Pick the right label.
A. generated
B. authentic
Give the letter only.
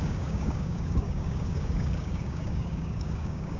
A